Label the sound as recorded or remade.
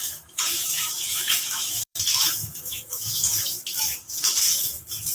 remade